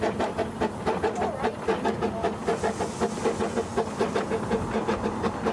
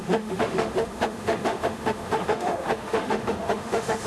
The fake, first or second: second